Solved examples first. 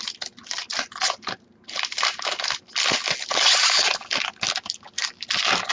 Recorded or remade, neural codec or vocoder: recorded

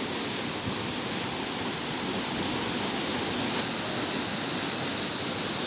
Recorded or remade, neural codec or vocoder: recorded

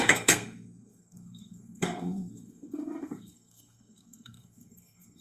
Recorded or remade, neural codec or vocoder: remade, codec, SNAC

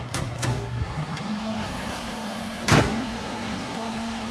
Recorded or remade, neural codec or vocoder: remade, codec, SNAC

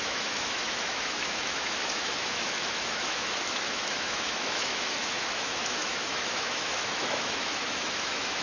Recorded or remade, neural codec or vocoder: remade, autoencoder, DAC-VAE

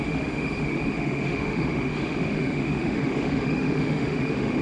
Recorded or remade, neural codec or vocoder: remade, autoencoder, DAC-VAE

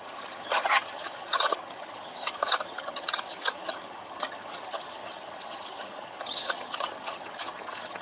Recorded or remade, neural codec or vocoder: remade, vocoder, HiFi-GAN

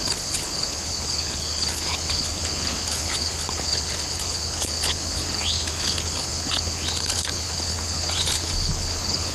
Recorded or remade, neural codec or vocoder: remade, codec, HILCodec